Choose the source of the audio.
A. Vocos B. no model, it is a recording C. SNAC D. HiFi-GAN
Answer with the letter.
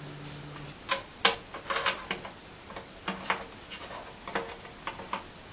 B